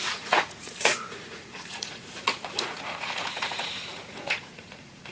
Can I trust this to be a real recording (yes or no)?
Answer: no